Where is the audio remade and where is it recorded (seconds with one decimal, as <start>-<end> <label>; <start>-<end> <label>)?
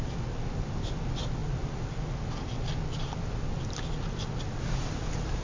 0.0-5.4 recorded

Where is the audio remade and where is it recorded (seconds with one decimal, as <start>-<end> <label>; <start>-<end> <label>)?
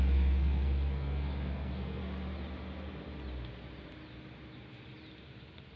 0.0-2.0 remade; 2.0-5.8 recorded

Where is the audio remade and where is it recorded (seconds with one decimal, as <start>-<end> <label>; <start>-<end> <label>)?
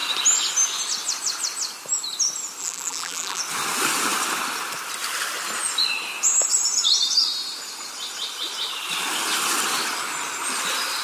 0.0-2.6 recorded; 2.6-3.4 remade; 3.4-11.0 recorded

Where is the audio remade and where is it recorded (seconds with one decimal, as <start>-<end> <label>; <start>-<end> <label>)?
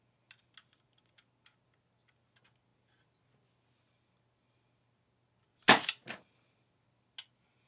0.0-7.7 recorded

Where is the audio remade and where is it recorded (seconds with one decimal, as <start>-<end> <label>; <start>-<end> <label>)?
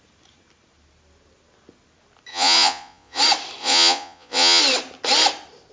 0.0-2.3 recorded; 2.3-3.2 remade; 3.2-3.6 recorded; 3.6-4.6 remade; 4.6-5.7 recorded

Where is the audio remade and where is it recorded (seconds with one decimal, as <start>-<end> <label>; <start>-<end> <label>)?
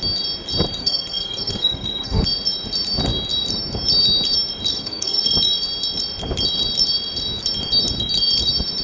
0.0-0.8 recorded; 0.8-2.2 remade; 2.2-4.7 recorded; 4.7-5.2 remade; 5.2-8.8 recorded